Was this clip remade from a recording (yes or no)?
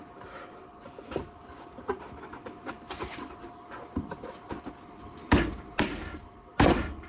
no